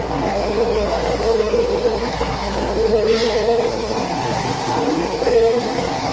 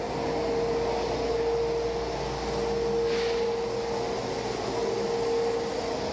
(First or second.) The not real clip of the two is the first